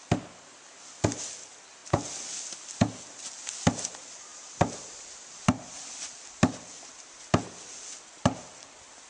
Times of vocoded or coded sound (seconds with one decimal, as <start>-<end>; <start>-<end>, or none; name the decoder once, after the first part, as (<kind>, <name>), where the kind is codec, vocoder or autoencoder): none